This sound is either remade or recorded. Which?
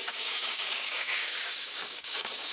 remade